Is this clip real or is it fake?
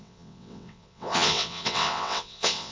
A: fake